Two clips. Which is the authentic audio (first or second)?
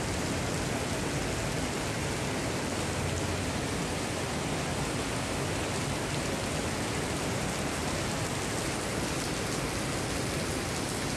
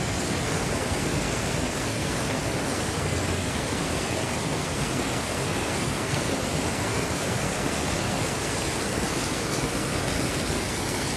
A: first